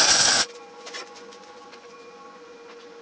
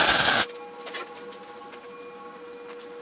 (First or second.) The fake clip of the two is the first